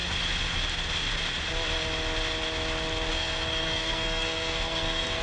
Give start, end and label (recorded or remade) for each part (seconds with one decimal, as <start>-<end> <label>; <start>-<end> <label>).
0.0-3.1 recorded; 3.1-5.2 remade